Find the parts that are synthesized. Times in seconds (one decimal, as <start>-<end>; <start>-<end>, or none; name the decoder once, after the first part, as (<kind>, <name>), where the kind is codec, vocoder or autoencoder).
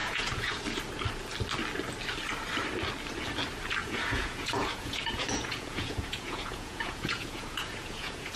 0.0-0.6 (vocoder, Vocos); 3.8-8.4